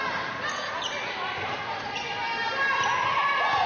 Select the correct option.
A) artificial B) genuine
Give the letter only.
B